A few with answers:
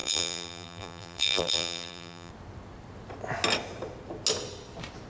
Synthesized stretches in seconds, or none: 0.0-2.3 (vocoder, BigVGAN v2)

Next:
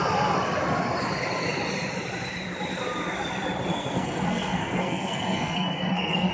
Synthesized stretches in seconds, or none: 3.7-6.3 (codec, SNAC)

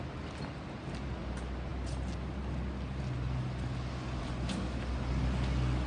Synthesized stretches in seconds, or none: none

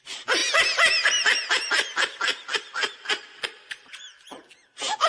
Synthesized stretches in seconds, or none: none